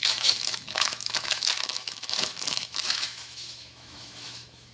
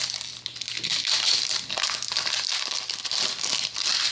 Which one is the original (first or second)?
second